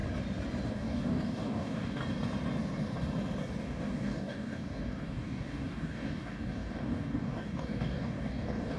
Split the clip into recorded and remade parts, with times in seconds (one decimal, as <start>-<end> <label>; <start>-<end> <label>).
0.0-0.7 recorded; 0.7-2.0 remade; 2.0-3.6 recorded; 3.6-8.8 remade